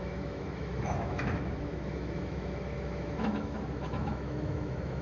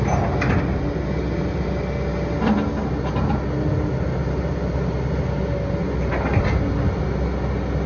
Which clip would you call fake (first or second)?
first